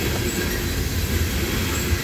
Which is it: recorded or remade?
recorded